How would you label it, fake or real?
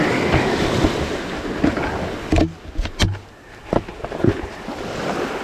real